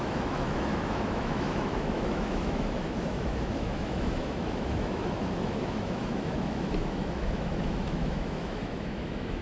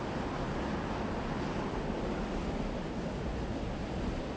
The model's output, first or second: first